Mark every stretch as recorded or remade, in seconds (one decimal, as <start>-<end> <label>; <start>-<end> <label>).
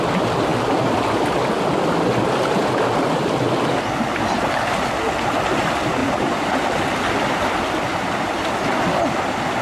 0.0-6.0 recorded; 6.0-8.1 remade; 8.1-9.6 recorded